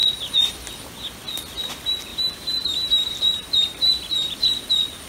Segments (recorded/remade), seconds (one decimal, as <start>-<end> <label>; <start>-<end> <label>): 0.0-2.1 recorded; 2.1-4.6 remade; 4.6-5.1 recorded